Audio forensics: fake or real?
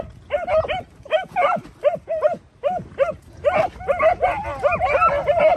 real